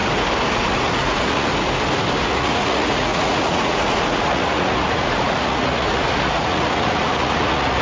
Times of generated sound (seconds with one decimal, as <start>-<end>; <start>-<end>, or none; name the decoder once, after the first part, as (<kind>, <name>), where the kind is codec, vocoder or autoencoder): 0.5-1.5 (vocoder, Vocos); 2.2-7.8